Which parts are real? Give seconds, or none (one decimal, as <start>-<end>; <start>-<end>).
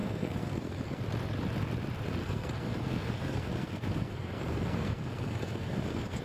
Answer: 1.0-2.2